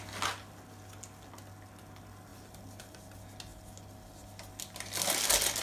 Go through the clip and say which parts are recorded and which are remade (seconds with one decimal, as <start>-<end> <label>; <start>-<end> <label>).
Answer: 0.0-5.6 recorded